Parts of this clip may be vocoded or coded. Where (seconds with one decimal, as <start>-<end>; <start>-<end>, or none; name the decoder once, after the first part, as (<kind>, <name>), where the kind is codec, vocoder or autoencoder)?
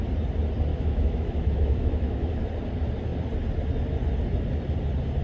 0.7-2.5 (autoencoder, DAC-VAE)